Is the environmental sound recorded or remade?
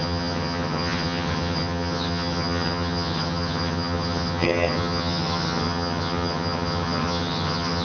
remade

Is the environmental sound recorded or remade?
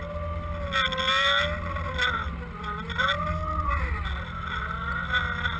recorded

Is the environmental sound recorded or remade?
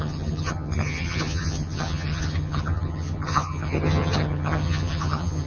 remade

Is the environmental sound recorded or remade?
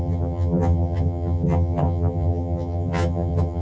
remade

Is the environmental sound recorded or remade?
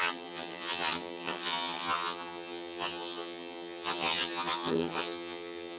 remade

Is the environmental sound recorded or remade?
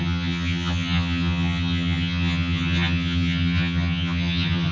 remade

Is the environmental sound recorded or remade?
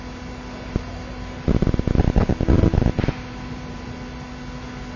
recorded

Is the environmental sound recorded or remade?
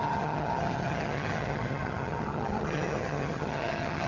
remade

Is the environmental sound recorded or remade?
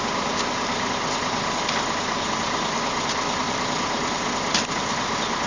recorded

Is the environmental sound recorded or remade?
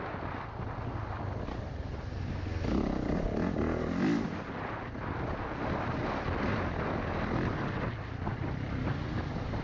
recorded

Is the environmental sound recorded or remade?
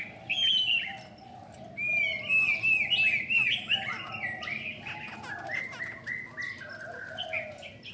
recorded